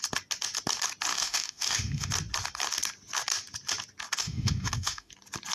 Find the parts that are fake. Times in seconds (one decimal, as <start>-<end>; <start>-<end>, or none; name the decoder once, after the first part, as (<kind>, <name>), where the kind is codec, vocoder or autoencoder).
1.1-2.1 (autoencoder, DAC-VAE); 4.2-5.1

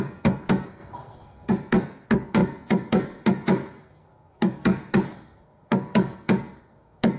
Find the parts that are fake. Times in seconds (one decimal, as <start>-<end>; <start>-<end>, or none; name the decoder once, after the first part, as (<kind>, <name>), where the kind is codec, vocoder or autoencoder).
0.0-7.2 (codec, SNAC)